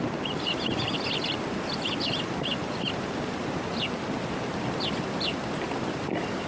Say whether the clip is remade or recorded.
recorded